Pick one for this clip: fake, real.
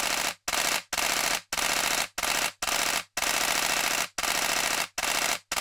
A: real